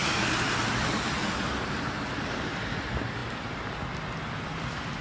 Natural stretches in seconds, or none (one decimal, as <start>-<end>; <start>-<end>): 0.0-5.0